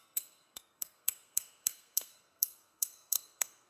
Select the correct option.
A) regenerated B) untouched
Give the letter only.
A